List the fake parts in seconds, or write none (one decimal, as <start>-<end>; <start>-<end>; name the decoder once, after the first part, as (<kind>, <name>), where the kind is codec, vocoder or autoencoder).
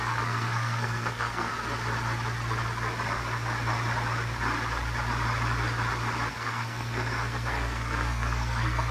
0.0-1.5 (codec, SNAC); 6.3-8.9